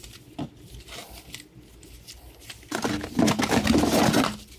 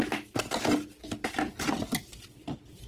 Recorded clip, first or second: first